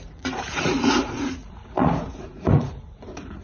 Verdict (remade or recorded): remade